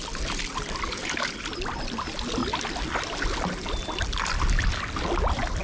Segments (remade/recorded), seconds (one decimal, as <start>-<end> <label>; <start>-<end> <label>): 0.0-2.4 remade; 2.4-5.6 recorded

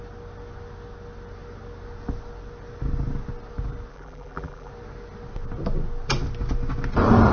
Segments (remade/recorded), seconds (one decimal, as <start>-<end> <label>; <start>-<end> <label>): 0.0-3.9 recorded; 3.9-4.7 remade; 4.7-7.3 recorded

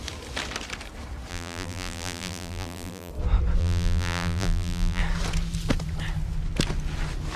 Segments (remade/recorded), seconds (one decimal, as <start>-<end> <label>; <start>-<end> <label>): 0.0-1.3 recorded; 1.3-3.1 remade; 3.1-3.6 recorded; 3.6-5.0 remade; 5.0-7.4 recorded

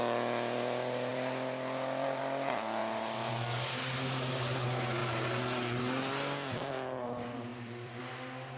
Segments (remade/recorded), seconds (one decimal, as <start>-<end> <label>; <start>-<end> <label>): 0.0-1.1 recorded; 1.1-2.2 remade; 2.2-2.8 recorded; 2.8-3.3 remade; 3.3-7.5 recorded; 7.5-8.0 remade; 8.0-8.6 recorded

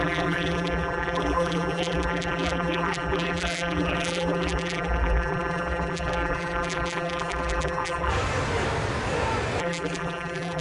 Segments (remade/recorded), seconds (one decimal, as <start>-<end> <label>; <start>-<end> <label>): 0.0-8.1 remade; 8.1-9.6 recorded; 9.6-10.6 remade